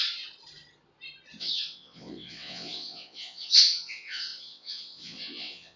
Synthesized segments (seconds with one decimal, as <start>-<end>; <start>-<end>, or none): 1.4-5.8